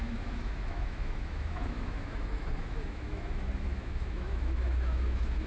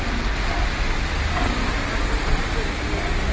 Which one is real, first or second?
second